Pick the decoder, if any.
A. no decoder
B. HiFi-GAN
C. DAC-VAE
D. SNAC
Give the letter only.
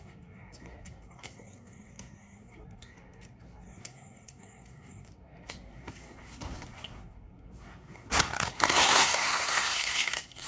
D